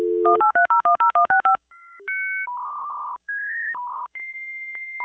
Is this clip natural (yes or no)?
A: no